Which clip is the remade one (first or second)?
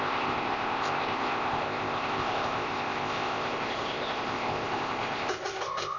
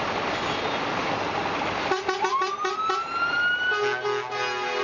first